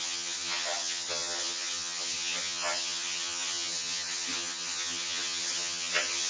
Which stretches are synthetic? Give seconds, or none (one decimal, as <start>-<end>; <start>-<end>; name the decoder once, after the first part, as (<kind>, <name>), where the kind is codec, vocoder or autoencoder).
0.0-6.3 (vocoder, HiFi-GAN)